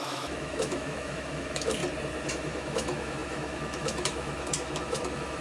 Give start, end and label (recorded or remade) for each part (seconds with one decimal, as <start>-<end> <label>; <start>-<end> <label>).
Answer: 0.0-1.8 remade; 1.8-2.3 recorded; 2.3-5.4 remade